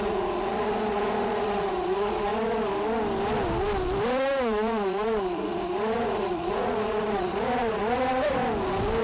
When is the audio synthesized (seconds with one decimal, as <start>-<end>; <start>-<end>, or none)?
0.0-2.3; 4.4-8.4